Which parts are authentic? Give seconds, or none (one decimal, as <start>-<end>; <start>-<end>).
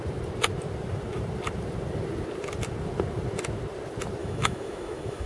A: 0.0-4.2